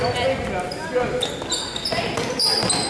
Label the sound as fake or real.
real